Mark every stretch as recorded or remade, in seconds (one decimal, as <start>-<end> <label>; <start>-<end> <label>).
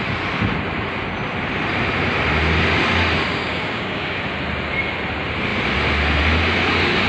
0.0-3.3 recorded; 3.3-4.2 remade; 4.2-7.1 recorded